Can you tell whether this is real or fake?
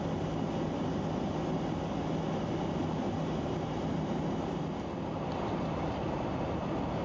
real